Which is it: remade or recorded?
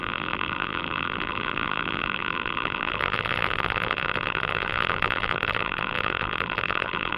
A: remade